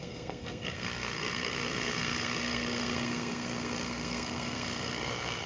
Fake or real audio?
fake